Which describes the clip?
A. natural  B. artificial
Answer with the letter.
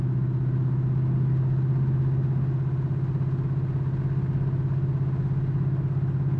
A